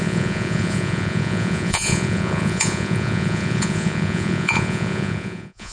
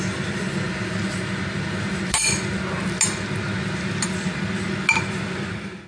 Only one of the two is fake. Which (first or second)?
first